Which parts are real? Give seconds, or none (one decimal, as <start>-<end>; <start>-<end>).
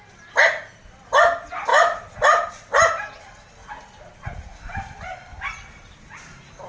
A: 0.0-6.7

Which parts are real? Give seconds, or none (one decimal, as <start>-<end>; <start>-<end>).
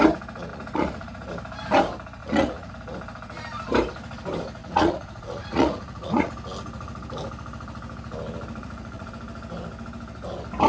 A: 0.0-0.5; 1.3-2.2; 2.7-4.6; 6.3-8.6; 9.1-10.7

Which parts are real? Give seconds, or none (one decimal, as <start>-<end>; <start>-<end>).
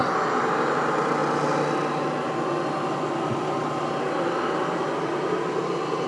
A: 0.0-6.1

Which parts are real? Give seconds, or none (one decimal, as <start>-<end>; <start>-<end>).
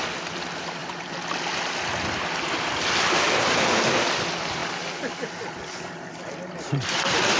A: 0.0-7.4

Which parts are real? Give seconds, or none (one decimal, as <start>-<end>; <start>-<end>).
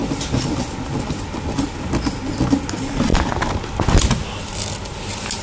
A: 0.0-5.4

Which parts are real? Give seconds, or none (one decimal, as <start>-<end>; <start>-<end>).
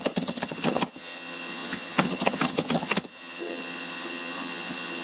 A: none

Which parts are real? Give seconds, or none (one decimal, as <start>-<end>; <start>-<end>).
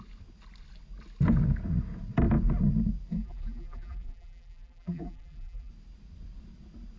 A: 0.0-3.1; 5.7-7.0